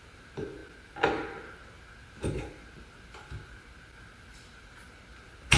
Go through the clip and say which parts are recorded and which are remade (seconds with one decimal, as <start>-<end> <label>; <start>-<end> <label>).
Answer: 0.0-5.6 recorded